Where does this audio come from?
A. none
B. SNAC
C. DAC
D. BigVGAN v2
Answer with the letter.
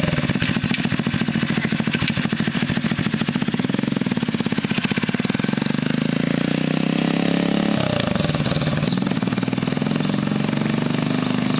A